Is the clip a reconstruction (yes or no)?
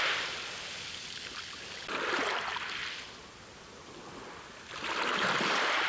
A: no